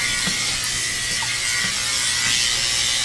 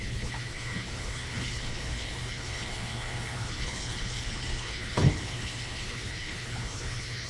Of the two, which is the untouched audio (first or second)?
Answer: first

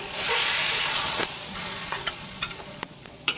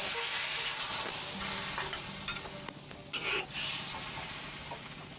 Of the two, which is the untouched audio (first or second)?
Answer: second